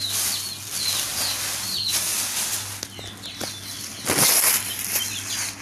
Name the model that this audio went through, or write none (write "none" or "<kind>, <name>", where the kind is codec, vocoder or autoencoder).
none